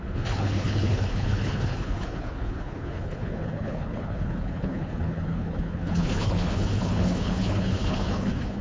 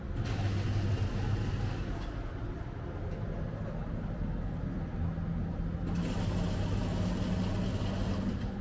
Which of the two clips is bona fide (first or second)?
second